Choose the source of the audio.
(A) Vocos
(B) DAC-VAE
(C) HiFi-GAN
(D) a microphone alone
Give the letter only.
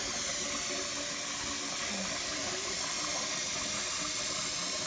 D